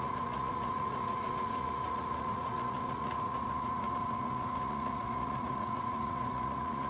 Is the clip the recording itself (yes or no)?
no